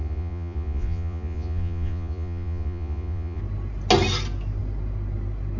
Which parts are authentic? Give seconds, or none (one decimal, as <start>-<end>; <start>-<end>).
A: 3.4-5.6